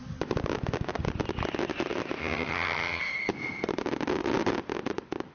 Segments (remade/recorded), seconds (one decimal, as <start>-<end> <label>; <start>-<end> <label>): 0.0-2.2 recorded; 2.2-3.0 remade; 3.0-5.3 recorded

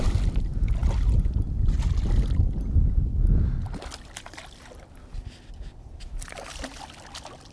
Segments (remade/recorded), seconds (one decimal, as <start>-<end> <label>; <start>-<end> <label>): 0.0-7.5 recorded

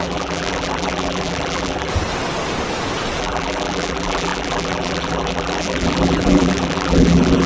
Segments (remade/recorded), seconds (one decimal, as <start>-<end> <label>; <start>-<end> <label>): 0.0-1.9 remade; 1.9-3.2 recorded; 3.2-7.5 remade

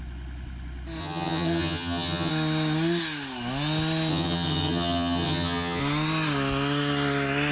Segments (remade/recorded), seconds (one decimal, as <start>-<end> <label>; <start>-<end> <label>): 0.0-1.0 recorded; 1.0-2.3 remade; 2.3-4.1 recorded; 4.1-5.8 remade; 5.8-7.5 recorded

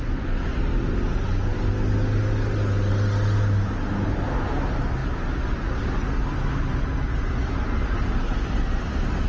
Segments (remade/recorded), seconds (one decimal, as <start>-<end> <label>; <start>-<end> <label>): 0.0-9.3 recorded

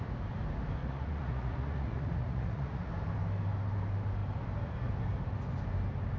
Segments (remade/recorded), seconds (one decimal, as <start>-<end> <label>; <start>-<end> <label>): 0.0-0.8 recorded; 0.8-2.9 remade; 2.9-6.2 recorded